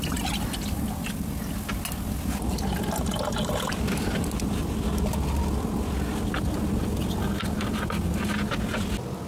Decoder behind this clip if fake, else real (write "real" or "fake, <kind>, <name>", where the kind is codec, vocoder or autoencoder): real